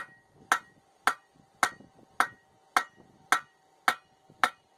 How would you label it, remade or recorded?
recorded